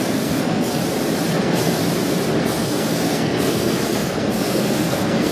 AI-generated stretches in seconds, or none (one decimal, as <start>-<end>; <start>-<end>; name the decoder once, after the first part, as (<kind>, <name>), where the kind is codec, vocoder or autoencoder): 0.0-0.8 (codec, SNAC); 1.3-1.8; 2.4-5.3